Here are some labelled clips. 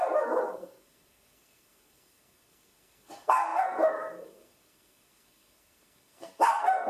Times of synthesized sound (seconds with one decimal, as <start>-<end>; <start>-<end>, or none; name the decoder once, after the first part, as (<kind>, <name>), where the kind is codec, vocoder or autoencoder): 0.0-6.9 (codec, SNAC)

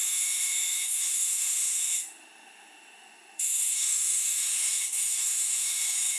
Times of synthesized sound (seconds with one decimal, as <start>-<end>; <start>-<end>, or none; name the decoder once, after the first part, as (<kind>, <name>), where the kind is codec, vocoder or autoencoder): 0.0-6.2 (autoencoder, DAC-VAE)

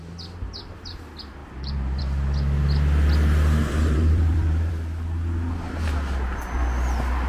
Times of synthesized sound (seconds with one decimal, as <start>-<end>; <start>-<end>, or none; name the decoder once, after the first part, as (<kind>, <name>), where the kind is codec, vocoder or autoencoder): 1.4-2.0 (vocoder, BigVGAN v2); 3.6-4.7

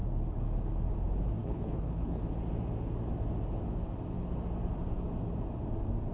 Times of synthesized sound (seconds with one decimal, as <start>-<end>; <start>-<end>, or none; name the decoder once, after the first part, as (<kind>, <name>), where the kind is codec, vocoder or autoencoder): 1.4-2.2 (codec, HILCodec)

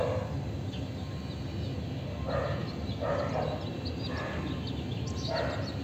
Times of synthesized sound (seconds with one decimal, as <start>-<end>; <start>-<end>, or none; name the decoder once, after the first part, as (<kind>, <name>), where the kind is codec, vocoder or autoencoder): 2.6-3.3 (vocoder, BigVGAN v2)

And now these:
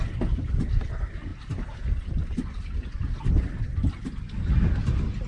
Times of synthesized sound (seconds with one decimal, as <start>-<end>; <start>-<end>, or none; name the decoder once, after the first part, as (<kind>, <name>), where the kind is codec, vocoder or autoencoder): none

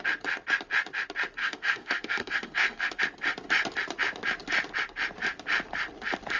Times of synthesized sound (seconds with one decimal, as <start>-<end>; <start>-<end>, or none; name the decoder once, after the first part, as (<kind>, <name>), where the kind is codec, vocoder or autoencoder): 1.4-3.0 (codec, SNAC)

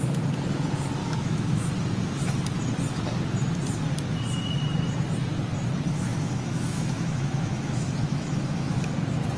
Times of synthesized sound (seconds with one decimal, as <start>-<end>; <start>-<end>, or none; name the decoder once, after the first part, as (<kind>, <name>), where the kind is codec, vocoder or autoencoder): 1.0-1.7 (autoencoder, DAC-VAE); 6.1-8.9